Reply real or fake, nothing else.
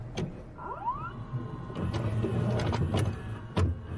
real